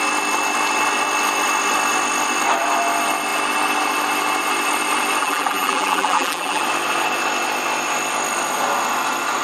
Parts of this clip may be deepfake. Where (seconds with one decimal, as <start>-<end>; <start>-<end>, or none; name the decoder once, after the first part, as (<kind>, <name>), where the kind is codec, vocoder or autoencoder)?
5.2-6.6 (vocoder, BigVGAN v2)